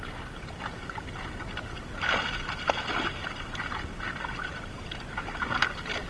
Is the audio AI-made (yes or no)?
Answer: no